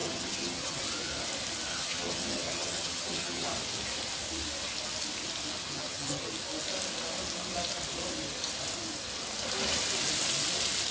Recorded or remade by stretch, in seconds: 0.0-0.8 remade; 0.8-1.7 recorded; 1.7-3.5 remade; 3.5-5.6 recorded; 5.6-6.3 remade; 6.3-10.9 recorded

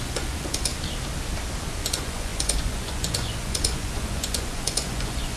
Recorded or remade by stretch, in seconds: 0.0-0.7 remade; 0.7-1.8 recorded; 1.8-5.4 remade